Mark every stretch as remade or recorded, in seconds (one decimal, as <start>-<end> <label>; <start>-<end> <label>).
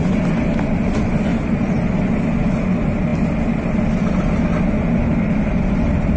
0.0-6.2 recorded